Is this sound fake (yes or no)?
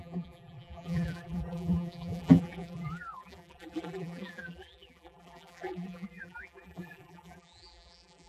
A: yes